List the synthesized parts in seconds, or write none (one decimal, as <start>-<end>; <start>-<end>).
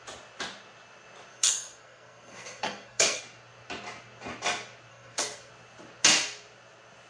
1.3-3.2; 4.9-5.5